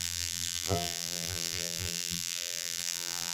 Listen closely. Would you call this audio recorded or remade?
remade